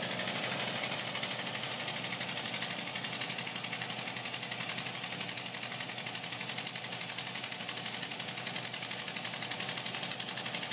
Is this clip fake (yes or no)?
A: no